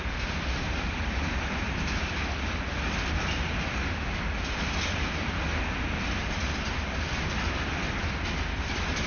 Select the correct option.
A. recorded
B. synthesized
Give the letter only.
A